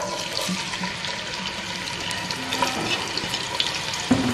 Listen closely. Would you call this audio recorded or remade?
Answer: recorded